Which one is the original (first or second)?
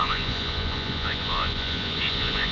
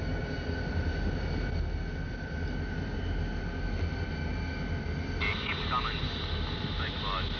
second